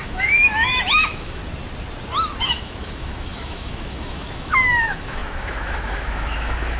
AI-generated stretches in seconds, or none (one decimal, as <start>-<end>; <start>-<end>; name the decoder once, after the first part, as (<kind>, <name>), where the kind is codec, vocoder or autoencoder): 0.0-1.4 (autoencoder, DAC-VAE); 2.4-6.8